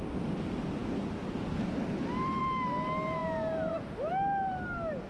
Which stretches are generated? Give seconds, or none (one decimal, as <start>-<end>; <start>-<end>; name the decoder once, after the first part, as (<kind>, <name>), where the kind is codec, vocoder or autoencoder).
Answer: none